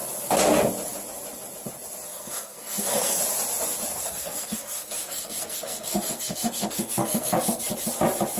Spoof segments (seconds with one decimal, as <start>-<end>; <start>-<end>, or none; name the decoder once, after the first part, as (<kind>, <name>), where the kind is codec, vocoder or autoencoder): 2.1-3.2 (codec, SNAC); 4.0-7.6